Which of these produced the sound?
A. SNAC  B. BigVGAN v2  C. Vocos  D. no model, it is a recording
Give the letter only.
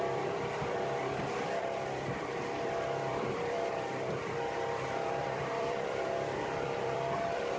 B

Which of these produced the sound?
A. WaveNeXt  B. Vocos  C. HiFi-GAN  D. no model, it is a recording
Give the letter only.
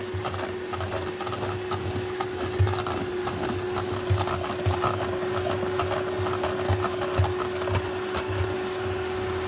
D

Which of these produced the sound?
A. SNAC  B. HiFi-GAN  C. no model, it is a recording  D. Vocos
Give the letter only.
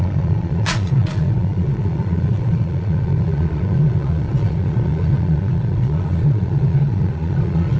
D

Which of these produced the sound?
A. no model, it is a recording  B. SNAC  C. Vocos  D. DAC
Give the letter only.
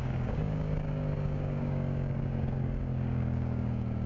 D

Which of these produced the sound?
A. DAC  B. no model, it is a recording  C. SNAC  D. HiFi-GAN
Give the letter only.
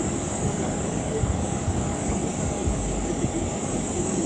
A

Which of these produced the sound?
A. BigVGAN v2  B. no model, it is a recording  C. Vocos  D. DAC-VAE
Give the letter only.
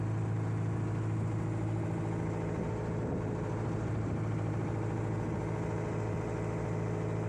B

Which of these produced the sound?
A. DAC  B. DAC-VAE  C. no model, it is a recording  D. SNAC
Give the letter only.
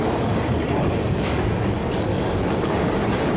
A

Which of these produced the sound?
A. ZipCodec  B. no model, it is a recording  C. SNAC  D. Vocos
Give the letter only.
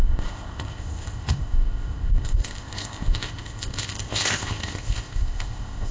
A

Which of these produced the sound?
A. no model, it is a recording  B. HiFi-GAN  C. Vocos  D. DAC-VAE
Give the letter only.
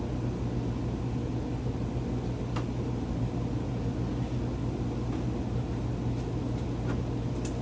A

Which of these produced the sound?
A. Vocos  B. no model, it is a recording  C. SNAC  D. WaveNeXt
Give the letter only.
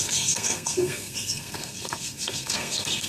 C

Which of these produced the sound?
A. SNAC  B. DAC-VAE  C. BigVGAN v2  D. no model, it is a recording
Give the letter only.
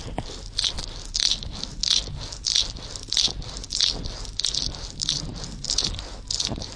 D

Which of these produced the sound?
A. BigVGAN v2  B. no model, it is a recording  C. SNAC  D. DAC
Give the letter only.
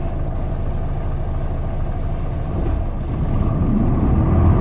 B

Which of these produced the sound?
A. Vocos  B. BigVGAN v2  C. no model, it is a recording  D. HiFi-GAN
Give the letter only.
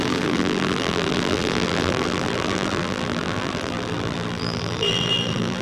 B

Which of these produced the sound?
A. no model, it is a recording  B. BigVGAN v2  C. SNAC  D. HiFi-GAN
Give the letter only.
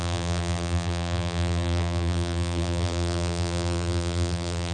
B